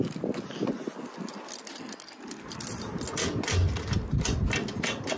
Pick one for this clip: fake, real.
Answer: real